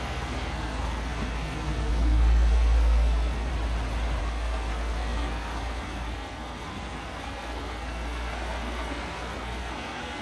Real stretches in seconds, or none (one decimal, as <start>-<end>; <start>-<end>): 3.5-4.2